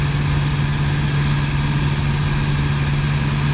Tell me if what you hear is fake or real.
real